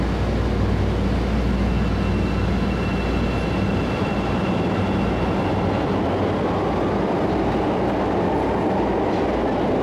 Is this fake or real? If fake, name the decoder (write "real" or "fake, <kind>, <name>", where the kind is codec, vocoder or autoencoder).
real